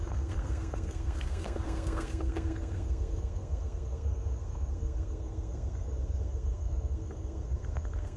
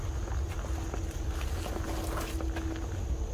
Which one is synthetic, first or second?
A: first